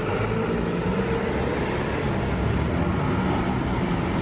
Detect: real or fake real